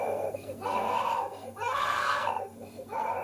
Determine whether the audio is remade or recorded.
remade